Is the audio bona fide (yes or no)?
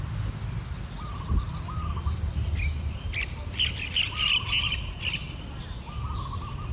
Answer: yes